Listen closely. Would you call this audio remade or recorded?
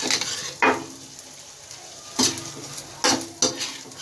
recorded